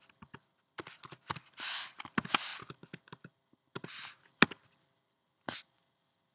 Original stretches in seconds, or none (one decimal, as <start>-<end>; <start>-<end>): 0.0-6.3